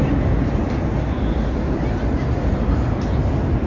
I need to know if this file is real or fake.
real